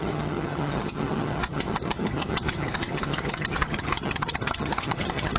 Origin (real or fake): fake